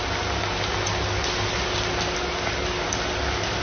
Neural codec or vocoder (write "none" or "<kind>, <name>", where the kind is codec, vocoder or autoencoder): none